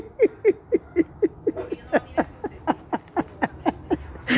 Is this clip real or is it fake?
real